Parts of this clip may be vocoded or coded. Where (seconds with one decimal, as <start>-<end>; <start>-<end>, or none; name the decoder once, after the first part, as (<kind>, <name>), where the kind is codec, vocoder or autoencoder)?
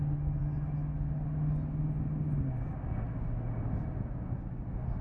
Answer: none